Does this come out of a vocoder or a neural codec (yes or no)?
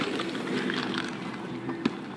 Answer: no